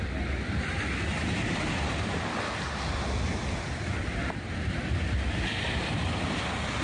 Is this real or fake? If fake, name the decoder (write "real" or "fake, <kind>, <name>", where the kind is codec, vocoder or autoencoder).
real